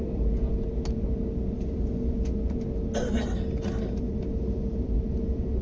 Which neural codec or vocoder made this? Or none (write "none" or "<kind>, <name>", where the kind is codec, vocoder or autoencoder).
none